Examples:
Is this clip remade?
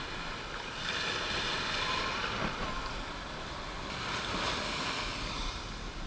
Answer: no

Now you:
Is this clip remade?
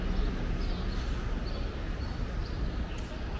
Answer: no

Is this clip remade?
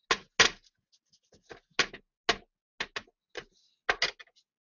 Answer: no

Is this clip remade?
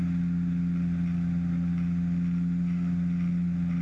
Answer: no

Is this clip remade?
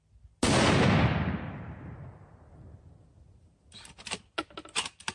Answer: no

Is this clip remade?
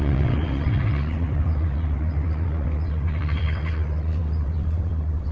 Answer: yes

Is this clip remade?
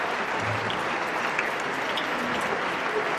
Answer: no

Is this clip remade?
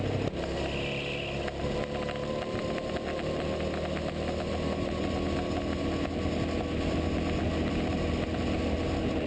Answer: no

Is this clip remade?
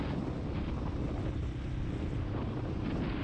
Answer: no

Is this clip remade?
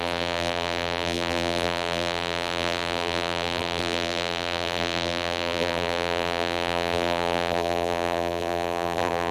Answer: yes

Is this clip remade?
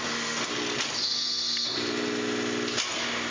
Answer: no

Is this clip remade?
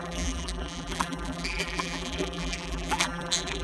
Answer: yes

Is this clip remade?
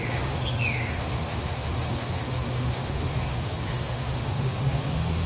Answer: yes